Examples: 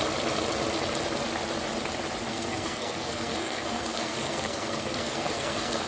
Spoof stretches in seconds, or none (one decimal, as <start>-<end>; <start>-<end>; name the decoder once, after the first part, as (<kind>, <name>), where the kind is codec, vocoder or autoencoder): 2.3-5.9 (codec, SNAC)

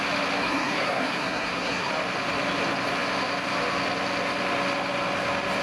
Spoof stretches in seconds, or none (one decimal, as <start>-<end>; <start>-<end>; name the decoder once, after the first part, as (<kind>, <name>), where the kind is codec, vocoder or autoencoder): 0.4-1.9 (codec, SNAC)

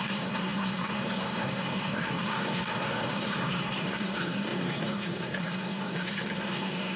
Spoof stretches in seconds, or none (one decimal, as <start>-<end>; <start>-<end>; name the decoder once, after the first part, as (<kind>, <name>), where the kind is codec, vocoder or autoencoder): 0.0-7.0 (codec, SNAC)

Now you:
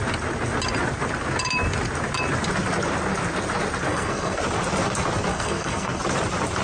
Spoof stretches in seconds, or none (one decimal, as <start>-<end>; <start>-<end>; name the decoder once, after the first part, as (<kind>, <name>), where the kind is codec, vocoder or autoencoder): 3.9-4.4 (codec, SNAC); 5.3-6.0

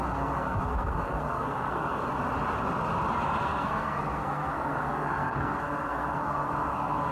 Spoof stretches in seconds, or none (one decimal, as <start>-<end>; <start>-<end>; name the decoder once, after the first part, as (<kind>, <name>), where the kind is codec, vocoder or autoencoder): 0.0-2.1 (codec, SNAC); 3.4-7.1

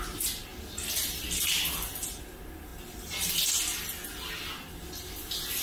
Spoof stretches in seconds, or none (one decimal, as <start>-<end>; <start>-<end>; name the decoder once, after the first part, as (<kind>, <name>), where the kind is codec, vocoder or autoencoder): none

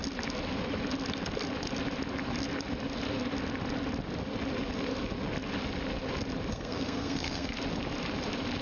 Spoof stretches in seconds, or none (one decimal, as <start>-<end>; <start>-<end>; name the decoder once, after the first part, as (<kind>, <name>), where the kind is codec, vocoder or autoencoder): 6.5-7.5 (codec, SNAC)